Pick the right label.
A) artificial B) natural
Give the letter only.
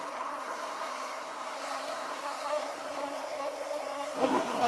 A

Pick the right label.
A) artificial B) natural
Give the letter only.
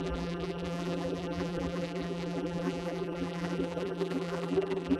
A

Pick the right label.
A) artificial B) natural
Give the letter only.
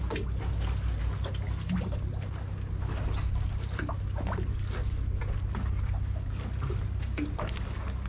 B